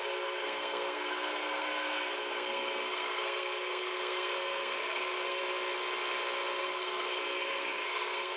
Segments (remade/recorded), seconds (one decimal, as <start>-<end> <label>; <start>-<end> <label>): 0.0-5.4 remade; 5.4-6.6 recorded; 6.6-8.4 remade